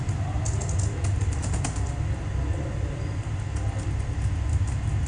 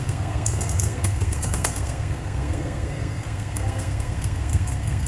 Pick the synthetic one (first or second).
second